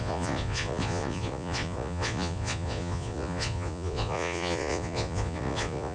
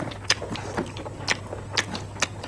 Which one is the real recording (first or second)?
second